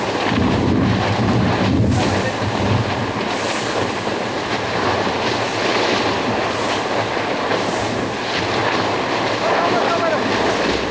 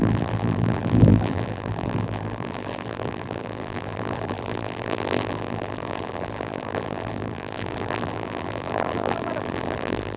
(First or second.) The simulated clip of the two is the second